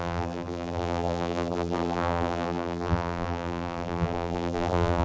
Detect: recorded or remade remade